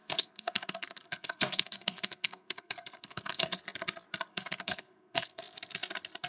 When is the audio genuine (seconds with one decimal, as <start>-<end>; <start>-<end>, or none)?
3.6-4.3; 5.4-6.3